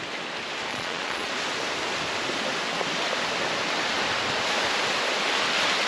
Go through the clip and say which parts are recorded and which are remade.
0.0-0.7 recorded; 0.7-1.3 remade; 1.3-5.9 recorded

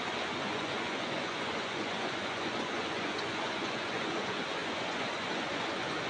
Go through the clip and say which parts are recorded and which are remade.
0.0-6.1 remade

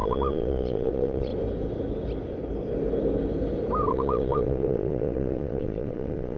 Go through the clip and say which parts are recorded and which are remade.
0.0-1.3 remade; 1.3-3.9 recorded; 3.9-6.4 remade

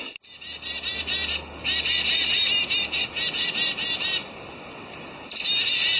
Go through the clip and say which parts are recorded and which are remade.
0.0-6.0 recorded

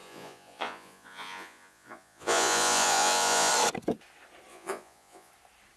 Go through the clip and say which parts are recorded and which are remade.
0.0-3.5 remade; 3.5-4.5 recorded; 4.5-5.3 remade; 5.3-5.8 recorded